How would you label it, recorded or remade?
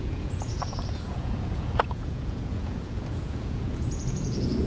remade